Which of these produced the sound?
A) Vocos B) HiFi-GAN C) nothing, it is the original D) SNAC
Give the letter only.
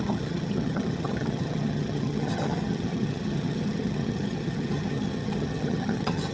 B